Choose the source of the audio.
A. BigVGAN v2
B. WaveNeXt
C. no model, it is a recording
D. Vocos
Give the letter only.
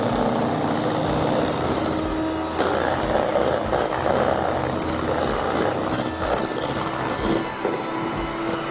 C